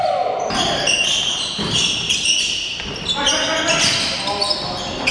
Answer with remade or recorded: recorded